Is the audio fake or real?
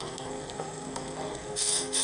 fake